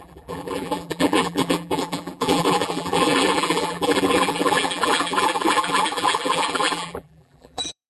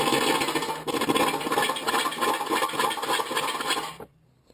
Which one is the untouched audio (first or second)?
second